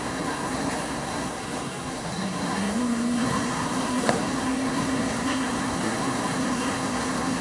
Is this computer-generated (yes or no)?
yes